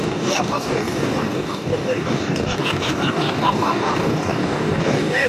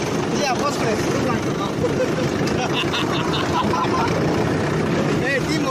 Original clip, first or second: second